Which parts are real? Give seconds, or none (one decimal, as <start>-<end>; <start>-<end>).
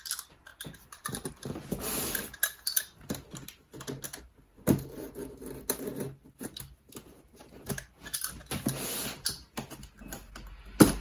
0.0-0.5; 1.3-11.0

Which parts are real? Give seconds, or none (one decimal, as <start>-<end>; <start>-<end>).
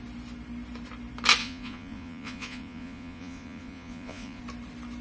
0.0-1.4; 4.4-5.0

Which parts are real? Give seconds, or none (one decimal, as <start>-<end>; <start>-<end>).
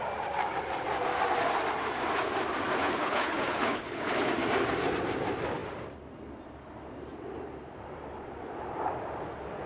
0.0-2.8; 4.3-9.7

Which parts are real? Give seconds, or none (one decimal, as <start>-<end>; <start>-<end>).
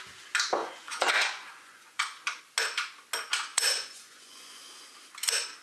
0.0-0.6; 2.4-3.5; 4.6-5.6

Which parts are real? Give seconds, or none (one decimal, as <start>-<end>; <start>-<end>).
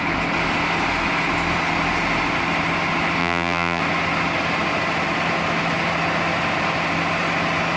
0.0-3.2; 3.8-7.8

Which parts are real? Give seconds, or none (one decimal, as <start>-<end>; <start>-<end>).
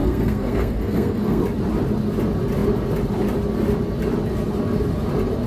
1.4-5.5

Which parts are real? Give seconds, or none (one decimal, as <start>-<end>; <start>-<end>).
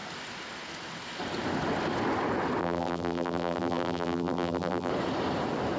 0.0-2.6; 4.9-5.8